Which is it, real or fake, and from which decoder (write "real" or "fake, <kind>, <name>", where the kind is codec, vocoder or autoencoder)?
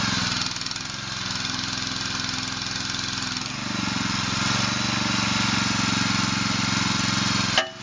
real